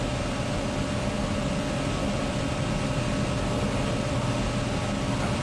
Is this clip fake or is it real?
real